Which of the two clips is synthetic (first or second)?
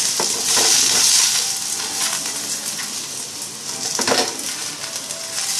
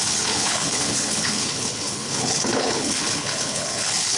second